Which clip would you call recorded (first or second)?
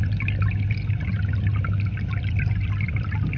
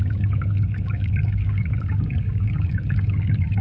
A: first